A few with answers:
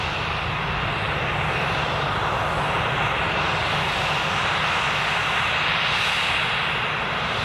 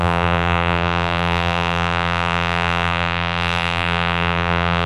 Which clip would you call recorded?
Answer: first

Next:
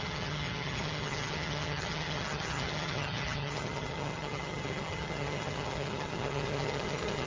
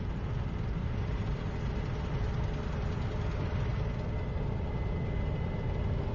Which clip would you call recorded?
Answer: second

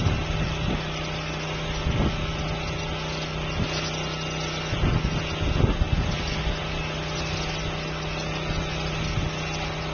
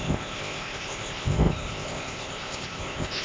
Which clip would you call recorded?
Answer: first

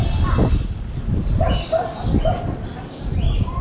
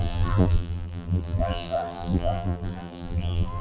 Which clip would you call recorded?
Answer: first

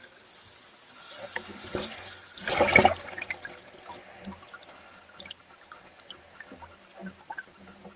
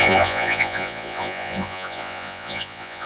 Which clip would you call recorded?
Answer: first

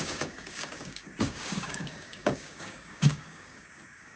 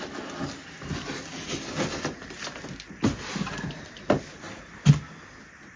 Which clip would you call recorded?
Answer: second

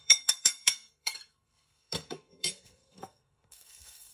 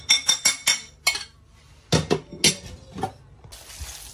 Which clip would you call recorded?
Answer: second